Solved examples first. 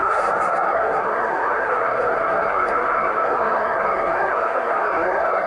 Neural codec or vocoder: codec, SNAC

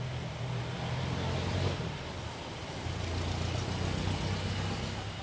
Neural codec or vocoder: none